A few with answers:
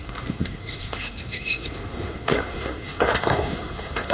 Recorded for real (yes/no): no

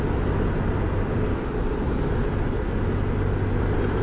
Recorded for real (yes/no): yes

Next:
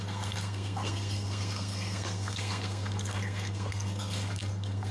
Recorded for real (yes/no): no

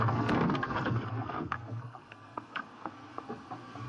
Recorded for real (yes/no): no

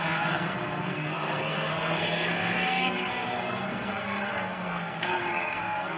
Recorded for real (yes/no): no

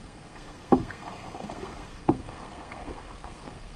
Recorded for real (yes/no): no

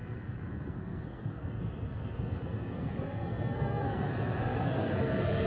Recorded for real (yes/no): no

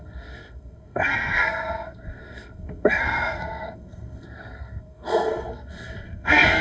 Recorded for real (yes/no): no